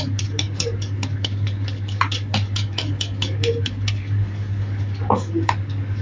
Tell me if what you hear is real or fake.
fake